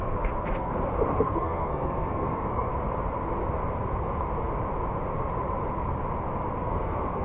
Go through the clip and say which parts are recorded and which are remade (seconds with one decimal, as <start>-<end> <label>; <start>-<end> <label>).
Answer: 0.0-0.7 remade; 0.7-1.2 recorded; 1.2-2.7 remade; 2.7-6.6 recorded; 6.6-7.2 remade